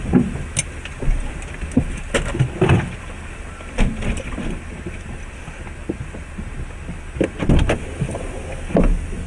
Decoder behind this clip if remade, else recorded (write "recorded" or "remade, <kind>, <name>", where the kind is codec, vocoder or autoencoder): recorded